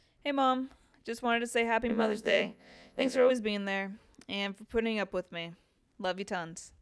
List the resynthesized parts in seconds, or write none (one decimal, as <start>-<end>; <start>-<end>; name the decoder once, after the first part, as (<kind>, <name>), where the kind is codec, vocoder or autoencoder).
1.9-3.3 (vocoder, Vocos)